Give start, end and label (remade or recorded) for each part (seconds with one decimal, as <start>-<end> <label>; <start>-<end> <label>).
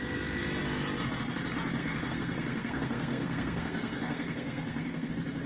0.0-1.8 recorded; 1.8-5.1 remade; 5.1-5.5 recorded